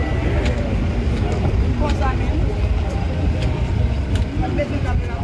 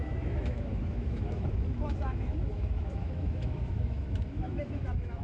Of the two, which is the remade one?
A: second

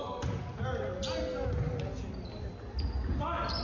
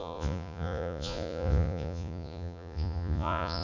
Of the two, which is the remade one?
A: second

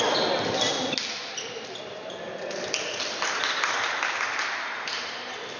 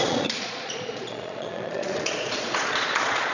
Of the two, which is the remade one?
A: second